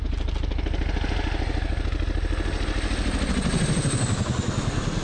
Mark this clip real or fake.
real